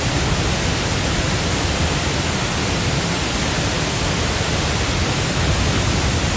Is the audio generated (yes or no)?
no